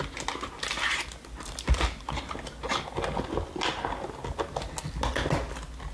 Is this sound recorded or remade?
recorded